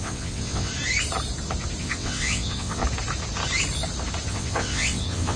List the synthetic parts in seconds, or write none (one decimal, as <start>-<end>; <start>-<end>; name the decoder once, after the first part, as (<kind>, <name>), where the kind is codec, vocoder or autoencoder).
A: 0.0-0.7 (vocoder, WaveNeXt); 1.8-2.8; 4.3-5.4